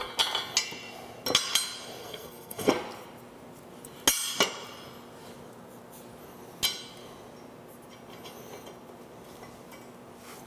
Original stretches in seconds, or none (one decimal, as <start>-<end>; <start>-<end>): 0.0-2.0; 2.7-10.5